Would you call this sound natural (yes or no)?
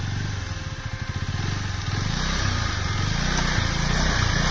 yes